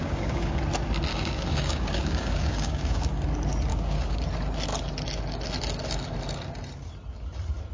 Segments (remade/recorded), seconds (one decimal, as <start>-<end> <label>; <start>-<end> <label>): 0.0-0.6 remade; 0.6-1.1 recorded; 1.1-3.2 remade; 3.2-3.7 recorded; 3.7-4.2 remade; 4.2-7.7 recorded